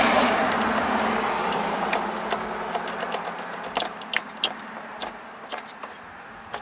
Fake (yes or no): no